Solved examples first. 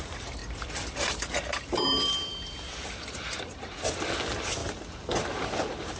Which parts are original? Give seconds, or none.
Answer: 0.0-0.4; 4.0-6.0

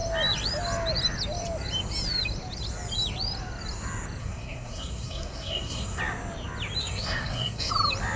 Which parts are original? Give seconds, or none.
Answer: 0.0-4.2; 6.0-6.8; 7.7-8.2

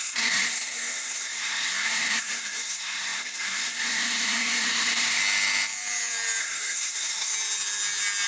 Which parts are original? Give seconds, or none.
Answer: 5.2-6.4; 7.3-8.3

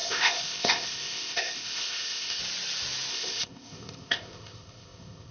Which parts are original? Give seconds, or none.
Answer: 2.4-3.1